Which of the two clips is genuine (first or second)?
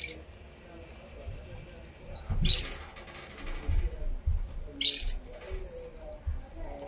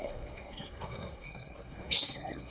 first